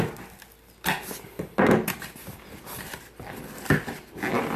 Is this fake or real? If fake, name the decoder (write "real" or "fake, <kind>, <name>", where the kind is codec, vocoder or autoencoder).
real